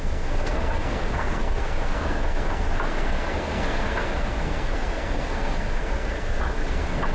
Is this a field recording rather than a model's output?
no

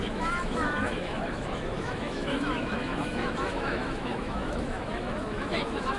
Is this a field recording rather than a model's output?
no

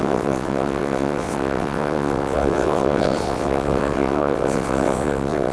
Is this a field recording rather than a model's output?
no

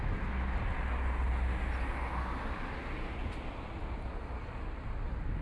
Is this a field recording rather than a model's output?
yes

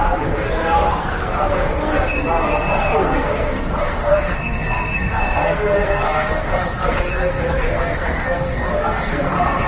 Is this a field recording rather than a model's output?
no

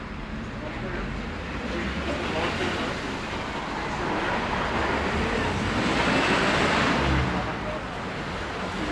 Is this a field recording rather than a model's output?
yes